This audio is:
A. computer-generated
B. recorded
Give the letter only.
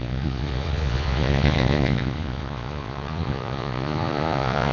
A